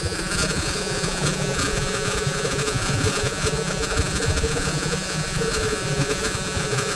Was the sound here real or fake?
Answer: fake